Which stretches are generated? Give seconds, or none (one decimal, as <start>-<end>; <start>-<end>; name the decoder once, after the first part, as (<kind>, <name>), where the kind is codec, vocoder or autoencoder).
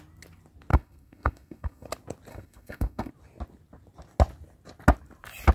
0.7-1.9 (codec, SNAC); 2.3-3.1